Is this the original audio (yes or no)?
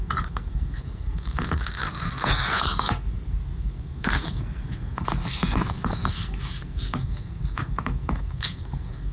no